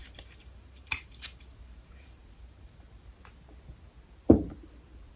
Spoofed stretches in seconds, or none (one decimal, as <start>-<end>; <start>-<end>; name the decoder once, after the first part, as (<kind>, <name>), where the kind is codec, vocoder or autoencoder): 0.0-3.1 (vocoder, BigVGAN v2)